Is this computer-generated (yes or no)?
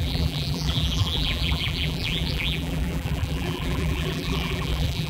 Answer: yes